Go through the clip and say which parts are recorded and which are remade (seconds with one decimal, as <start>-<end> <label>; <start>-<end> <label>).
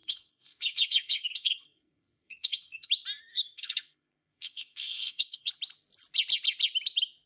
0.0-2.9 remade; 2.9-3.3 recorded; 3.3-5.5 remade; 5.5-7.3 recorded